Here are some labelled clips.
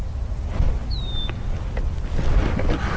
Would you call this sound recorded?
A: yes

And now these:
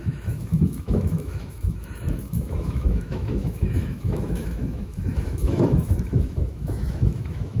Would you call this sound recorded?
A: no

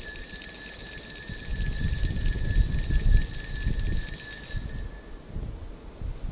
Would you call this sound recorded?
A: yes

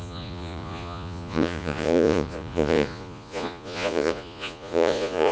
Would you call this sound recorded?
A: no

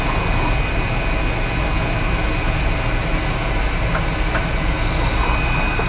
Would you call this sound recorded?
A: yes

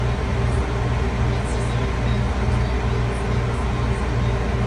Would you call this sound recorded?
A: yes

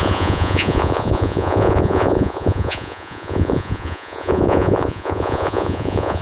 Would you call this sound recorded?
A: no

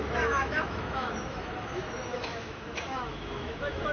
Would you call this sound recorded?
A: no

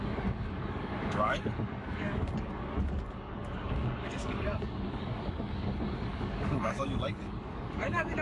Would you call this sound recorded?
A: no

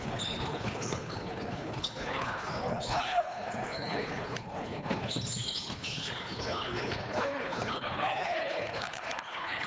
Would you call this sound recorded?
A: no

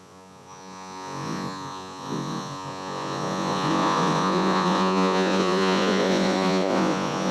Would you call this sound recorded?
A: no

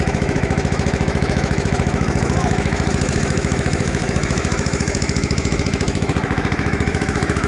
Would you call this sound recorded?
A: no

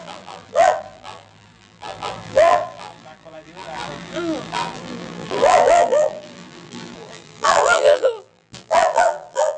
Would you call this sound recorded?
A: no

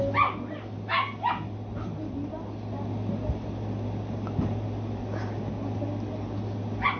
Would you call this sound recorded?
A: yes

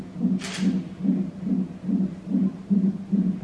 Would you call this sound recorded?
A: yes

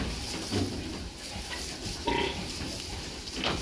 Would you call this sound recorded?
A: no